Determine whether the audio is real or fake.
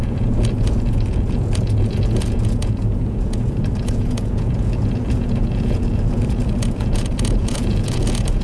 fake